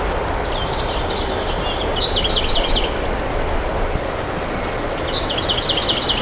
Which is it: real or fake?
real